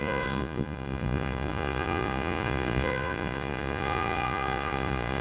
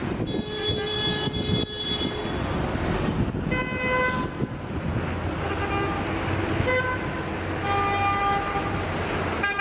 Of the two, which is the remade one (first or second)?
first